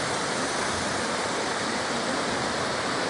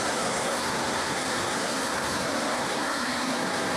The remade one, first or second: second